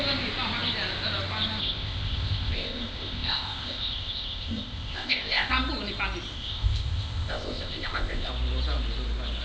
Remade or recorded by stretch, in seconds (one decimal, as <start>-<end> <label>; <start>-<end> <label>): 0.0-1.6 recorded; 1.6-5.5 remade; 5.5-6.3 recorded; 6.3-8.3 remade; 8.3-9.4 recorded